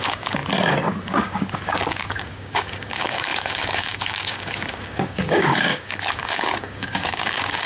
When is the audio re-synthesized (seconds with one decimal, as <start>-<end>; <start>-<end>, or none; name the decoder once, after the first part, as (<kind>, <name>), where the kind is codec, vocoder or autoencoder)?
0.0-0.4 (codec, DAC); 1.0-7.7